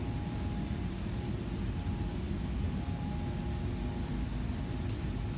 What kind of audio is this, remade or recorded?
recorded